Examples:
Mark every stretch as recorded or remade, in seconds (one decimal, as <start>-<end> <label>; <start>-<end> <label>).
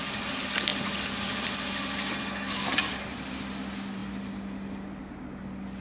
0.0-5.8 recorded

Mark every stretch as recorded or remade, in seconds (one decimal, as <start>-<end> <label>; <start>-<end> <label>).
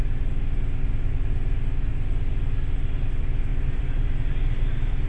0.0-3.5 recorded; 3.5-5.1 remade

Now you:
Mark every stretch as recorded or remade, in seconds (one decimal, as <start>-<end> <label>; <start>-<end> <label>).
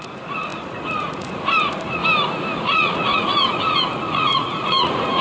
0.0-2.0 remade; 2.0-2.6 recorded; 2.6-5.2 remade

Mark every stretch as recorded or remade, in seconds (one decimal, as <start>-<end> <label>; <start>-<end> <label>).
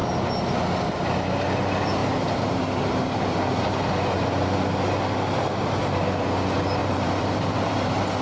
0.0-2.0 recorded; 2.0-2.6 remade; 2.6-6.8 recorded; 6.8-8.2 remade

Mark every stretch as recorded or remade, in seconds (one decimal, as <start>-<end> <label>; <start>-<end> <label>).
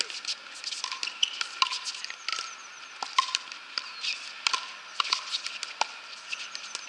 0.0-6.9 recorded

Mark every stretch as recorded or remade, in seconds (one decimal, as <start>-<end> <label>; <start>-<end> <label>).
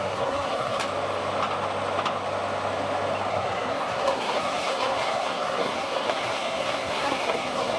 0.0-0.8 remade; 0.8-3.3 recorded; 3.3-7.8 remade